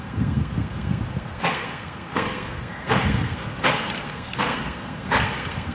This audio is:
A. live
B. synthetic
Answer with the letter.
B